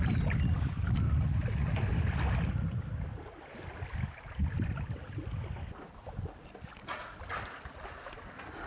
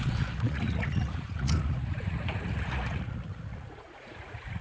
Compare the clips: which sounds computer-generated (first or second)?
second